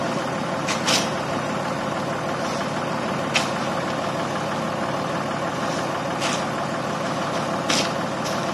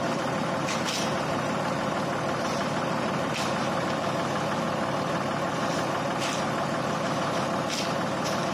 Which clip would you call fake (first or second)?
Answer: second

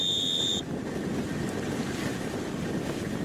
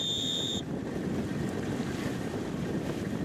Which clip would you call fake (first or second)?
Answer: second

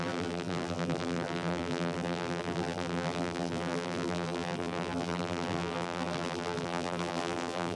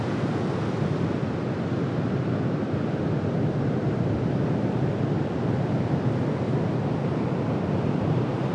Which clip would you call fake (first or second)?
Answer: first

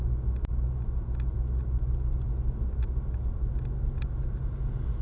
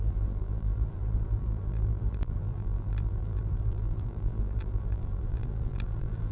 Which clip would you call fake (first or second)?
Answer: second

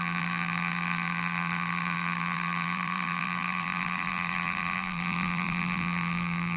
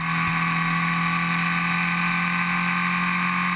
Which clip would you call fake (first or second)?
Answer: first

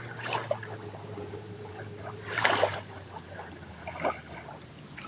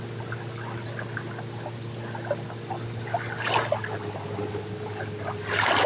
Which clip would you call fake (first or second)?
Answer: first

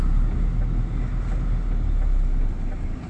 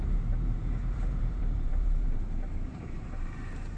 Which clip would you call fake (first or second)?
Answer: second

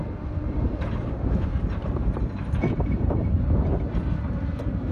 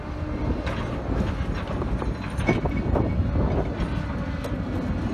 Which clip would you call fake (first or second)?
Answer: first